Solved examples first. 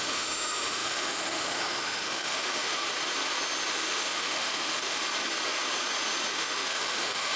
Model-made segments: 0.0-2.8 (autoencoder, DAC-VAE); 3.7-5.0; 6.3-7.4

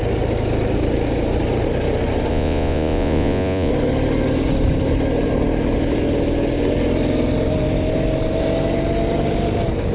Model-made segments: 2.3-3.7 (vocoder, Vocos)

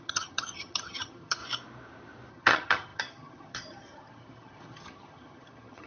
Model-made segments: 0.0-1.4 (vocoder, HiFi-GAN); 2.3-5.9